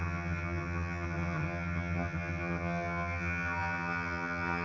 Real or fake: fake